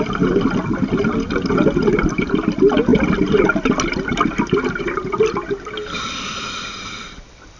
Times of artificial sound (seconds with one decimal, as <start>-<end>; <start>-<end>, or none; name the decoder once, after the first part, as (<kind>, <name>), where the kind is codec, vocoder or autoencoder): none